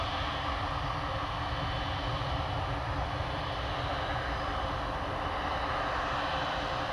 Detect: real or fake real